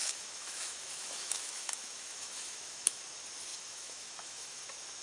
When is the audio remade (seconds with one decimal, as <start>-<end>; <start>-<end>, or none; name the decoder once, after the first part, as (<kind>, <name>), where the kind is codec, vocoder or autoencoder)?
0.0-3.0 (autoencoder, DAC-VAE); 3.5-4.6